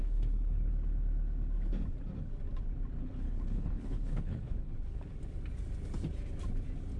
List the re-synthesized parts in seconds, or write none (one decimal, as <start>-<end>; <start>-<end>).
0.0-0.7; 3.0-5.0